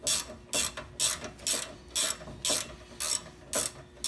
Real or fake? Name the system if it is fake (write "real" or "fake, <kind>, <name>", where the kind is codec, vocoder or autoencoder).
real